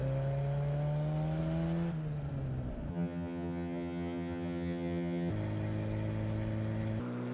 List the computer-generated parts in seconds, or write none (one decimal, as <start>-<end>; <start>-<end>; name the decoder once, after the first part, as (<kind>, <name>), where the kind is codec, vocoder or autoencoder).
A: 2.9-5.3 (vocoder, HiFi-GAN)